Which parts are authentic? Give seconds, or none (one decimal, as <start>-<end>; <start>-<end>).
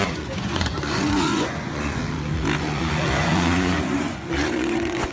2.0-2.6